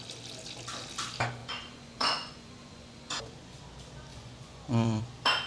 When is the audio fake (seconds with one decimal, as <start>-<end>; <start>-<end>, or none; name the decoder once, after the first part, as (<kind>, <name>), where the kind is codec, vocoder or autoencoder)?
1.4-3.6 (vocoder, Vocos); 4.1-5.0